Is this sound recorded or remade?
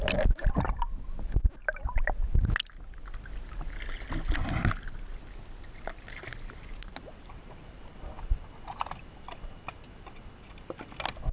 recorded